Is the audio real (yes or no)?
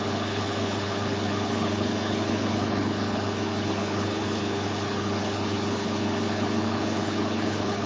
no